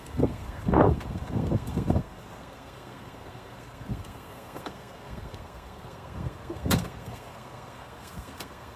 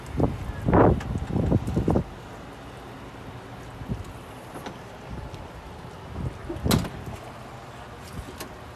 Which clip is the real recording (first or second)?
second